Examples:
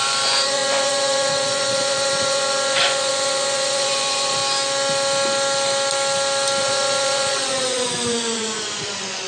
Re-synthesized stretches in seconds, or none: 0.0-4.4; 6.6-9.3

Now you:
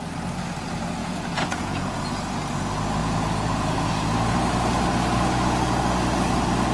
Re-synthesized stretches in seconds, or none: 1.0-2.0; 3.0-3.9

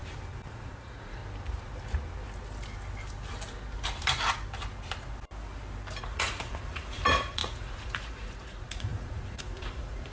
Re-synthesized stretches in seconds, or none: 0.5-1.2; 6.0-10.1

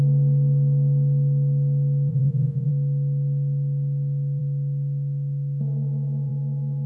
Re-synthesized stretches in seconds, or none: 2.1-2.7

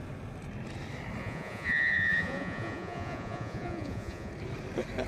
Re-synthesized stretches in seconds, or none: 1.2-4.3